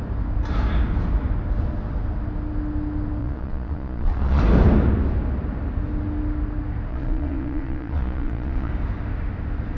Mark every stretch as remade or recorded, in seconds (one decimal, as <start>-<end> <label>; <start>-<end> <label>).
0.0-3.2 recorded; 3.2-4.4 remade; 4.4-6.9 recorded; 6.9-8.7 remade; 8.7-9.8 recorded